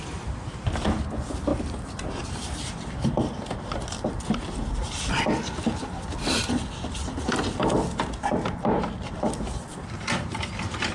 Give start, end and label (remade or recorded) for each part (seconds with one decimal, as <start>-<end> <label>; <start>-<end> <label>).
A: 0.0-6.4 remade; 6.4-8.5 recorded; 8.5-10.9 remade